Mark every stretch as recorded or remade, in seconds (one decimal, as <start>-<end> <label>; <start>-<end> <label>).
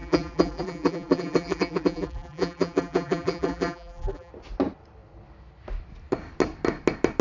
0.0-4.3 remade; 4.3-7.2 recorded